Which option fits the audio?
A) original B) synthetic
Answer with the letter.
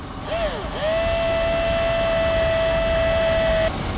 A